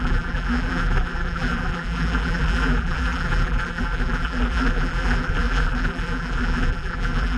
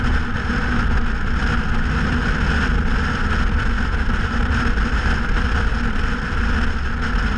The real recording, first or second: second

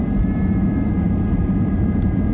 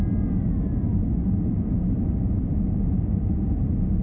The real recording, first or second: second